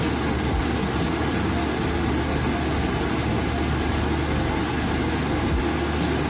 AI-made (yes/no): no